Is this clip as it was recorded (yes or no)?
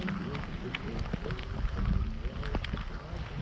yes